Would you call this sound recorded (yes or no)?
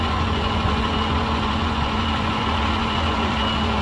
no